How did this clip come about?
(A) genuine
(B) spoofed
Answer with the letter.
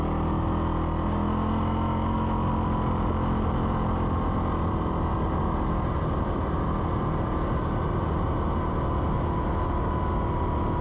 A